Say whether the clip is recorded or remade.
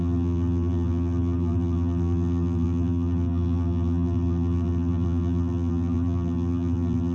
remade